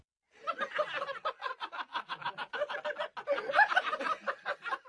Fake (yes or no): no